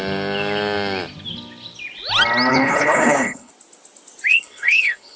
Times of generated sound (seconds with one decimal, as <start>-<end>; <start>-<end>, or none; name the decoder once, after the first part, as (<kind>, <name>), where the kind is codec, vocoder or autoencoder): 2.5-3.5 (codec, HILCodec); 4.3-5.2